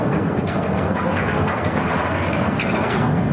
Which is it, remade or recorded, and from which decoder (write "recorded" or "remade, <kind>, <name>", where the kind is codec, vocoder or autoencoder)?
remade, codec, SNAC